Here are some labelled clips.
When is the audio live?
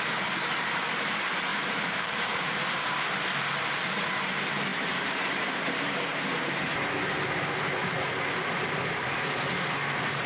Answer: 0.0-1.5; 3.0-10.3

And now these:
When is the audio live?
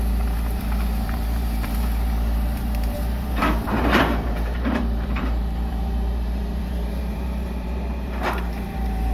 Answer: none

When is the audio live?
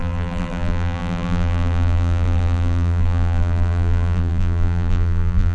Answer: none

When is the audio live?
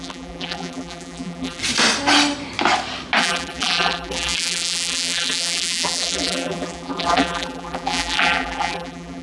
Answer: 1.6-3.2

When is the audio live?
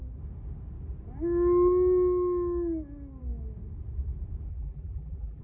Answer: 0.0-4.5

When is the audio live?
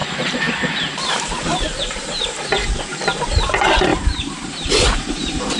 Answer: 2.6-3.4